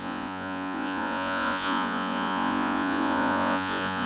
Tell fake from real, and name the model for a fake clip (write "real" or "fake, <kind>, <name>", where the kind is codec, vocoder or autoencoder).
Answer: fake, vocoder, Vocos